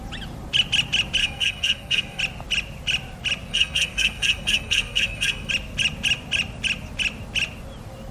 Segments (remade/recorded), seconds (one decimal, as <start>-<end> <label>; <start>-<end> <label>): 0.0-1.2 recorded; 1.2-2.2 remade; 2.2-3.5 recorded; 3.5-5.5 remade; 5.5-8.1 recorded